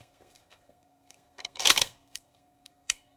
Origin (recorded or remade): remade